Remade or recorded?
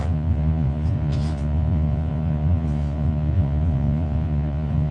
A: remade